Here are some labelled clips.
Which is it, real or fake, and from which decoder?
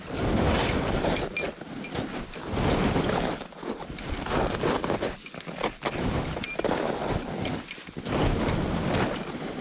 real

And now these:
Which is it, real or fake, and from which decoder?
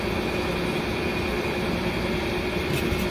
real